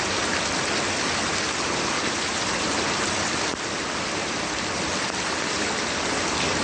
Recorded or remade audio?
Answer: recorded